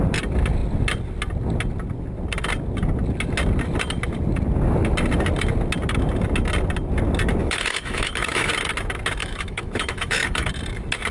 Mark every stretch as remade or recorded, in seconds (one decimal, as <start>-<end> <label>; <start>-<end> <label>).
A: 0.0-7.4 recorded; 7.4-8.5 remade; 8.5-9.2 recorded; 9.2-10.5 remade; 10.5-11.1 recorded